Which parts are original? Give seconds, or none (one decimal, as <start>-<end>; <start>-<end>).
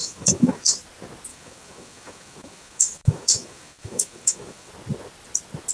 0.7-1.3; 4.7-5.7